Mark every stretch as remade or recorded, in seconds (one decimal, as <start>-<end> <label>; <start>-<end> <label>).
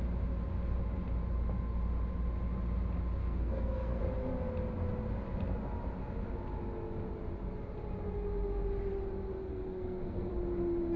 0.0-3.2 recorded; 3.2-4.0 remade; 4.0-9.5 recorded; 9.5-10.3 remade; 10.3-11.0 recorded